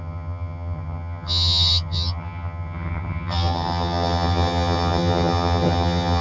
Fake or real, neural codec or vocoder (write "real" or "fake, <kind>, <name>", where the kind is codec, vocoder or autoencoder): fake, vocoder, HiFi-GAN